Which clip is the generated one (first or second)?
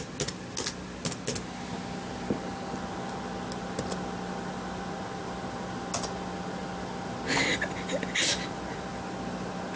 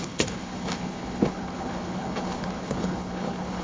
second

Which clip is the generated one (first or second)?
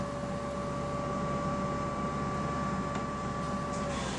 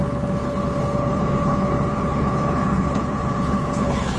second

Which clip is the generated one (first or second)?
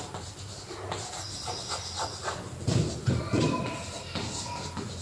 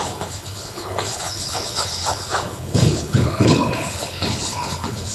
second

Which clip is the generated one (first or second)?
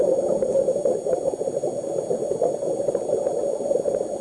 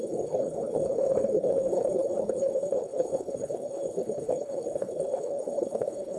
second